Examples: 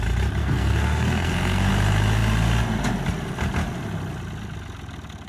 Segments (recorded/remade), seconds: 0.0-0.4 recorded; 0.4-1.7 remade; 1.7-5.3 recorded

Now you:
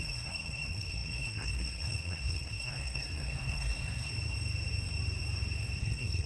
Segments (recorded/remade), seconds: 0.0-4.1 remade; 4.1-5.8 recorded; 5.8-6.3 remade

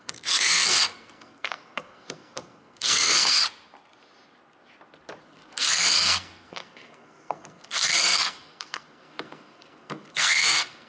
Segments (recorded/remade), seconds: 0.0-3.4 remade; 3.4-5.2 recorded; 5.2-10.9 remade

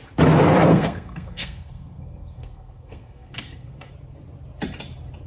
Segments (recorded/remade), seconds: 0.0-0.7 recorded; 0.7-3.9 remade; 3.9-5.3 recorded

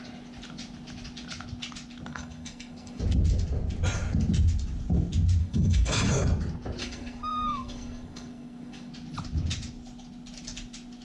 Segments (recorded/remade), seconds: 0.0-2.1 recorded; 2.1-3.0 remade; 3.0-5.4 recorded; 5.4-6.0 remade; 6.0-6.8 recorded; 6.8-8.9 remade; 8.9-11.0 recorded

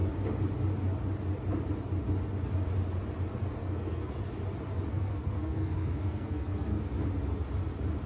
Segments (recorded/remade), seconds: 0.0-3.6 recorded; 3.6-4.1 remade; 4.1-4.9 recorded; 4.9-6.9 remade; 6.9-8.1 recorded

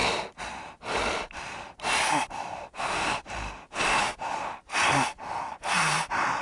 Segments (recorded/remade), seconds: 0.0-6.4 recorded

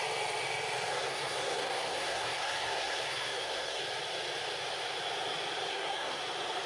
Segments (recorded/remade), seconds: 0.0-0.9 recorded; 0.9-3.8 remade; 3.8-5.7 recorded; 5.7-6.2 remade; 6.2-6.7 recorded